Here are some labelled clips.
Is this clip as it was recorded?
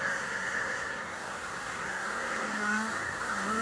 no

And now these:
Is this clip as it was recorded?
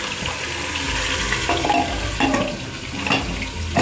yes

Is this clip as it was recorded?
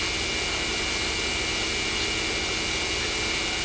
yes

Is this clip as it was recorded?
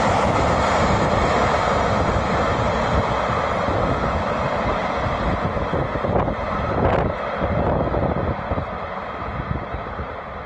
yes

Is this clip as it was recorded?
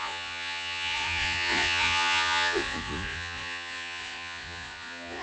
no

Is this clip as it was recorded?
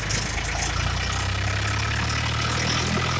yes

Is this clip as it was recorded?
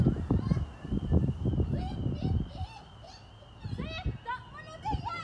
yes